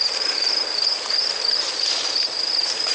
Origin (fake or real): fake